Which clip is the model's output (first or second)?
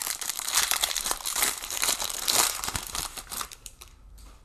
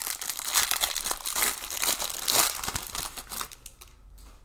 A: first